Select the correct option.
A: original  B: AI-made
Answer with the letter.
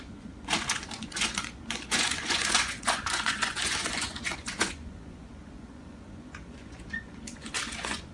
B